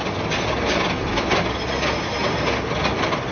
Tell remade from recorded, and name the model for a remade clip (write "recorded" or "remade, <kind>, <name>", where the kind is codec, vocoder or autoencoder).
recorded